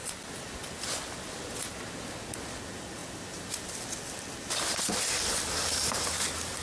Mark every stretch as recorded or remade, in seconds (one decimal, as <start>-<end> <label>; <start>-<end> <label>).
0.0-6.6 recorded